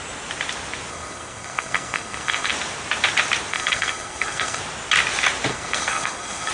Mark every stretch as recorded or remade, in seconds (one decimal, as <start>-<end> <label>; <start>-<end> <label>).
0.0-0.9 recorded; 0.9-2.5 remade; 2.5-3.5 recorded; 3.5-4.6 remade; 4.6-5.5 recorded; 5.5-6.5 remade